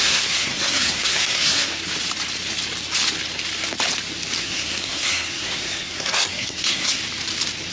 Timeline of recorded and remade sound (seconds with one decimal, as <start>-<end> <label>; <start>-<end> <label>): 0.0-1.7 remade; 1.7-4.4 recorded; 4.4-7.0 remade; 7.0-7.7 recorded